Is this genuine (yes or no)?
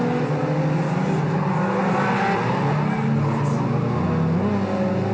yes